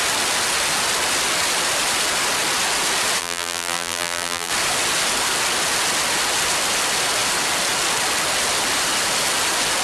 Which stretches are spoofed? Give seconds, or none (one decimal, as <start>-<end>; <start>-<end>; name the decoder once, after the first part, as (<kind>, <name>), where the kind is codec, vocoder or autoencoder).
3.2-4.5 (vocoder, BigVGAN v2)